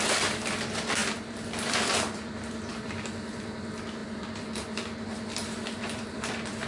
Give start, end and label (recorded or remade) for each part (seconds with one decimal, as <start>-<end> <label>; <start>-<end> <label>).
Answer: 0.0-6.7 remade